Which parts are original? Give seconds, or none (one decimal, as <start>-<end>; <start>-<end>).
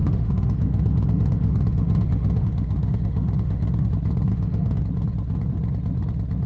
3.9-4.3; 4.8-6.5